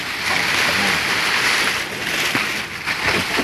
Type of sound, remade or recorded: recorded